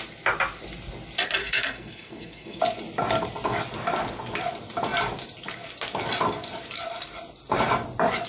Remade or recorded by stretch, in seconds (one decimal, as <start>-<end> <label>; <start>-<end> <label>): 0.0-1.4 recorded; 1.4-2.6 remade; 2.6-8.3 recorded